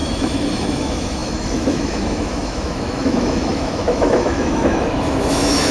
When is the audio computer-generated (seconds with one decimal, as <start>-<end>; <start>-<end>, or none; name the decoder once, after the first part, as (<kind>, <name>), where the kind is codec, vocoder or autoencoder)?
0.0-5.7 (autoencoder, DAC-VAE)